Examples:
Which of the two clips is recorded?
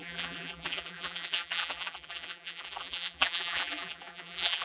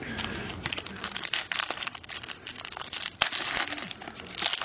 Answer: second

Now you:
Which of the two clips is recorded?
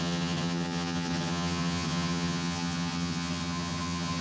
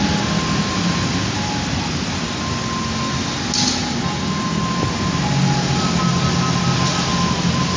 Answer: second